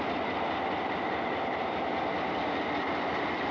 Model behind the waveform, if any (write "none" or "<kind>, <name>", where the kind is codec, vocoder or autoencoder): none